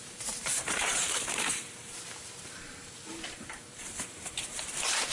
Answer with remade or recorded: remade